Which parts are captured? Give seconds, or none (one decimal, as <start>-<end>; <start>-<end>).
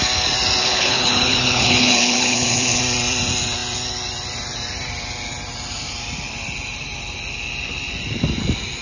0.0-0.6; 2.8-8.8